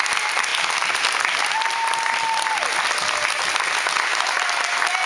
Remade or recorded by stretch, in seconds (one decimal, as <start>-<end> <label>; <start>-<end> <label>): 0.0-5.1 recorded